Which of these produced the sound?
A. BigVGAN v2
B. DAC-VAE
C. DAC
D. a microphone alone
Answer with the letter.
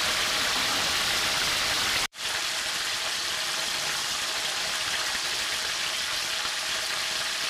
A